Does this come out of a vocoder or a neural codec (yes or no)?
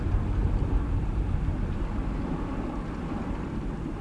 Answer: yes